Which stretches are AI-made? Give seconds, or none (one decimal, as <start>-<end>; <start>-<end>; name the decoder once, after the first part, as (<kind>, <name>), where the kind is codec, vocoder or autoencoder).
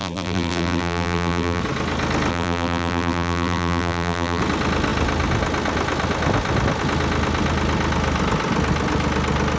0.0-1.6 (vocoder, BigVGAN v2); 2.3-4.4